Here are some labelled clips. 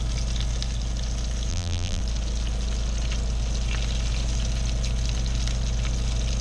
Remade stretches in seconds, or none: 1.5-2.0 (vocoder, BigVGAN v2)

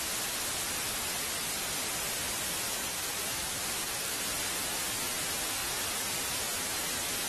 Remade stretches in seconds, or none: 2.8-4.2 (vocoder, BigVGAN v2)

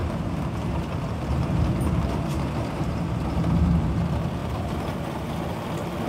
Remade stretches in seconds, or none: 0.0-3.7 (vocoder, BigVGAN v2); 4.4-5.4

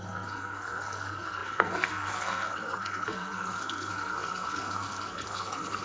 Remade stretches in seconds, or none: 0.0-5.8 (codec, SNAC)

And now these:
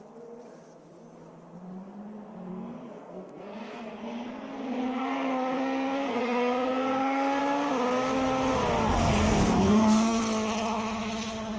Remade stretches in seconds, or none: 2.5-7.4 (codec, SNAC); 9.2-10.2

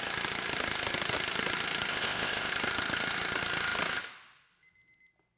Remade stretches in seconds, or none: 1.9-2.5 (codec, ZipCodec)